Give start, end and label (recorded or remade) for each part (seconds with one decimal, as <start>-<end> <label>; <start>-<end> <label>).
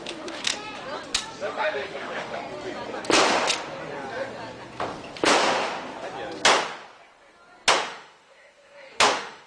0.0-0.5 remade; 0.5-1.5 recorded; 1.5-2.4 remade; 2.4-7.7 recorded; 7.7-9.5 remade